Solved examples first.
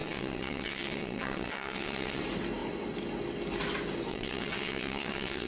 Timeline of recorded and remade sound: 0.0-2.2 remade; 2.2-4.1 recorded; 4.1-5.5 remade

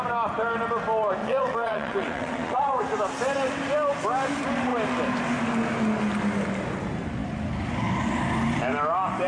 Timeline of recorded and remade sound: 0.0-1.2 recorded; 1.2-2.8 remade; 2.8-9.3 recorded